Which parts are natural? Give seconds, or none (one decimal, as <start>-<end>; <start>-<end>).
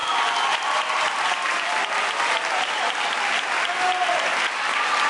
0.0-5.1